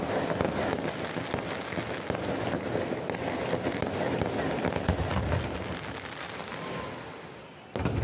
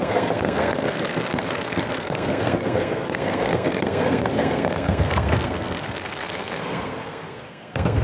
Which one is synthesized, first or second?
second